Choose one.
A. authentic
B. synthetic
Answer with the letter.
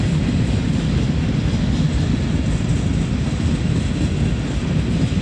A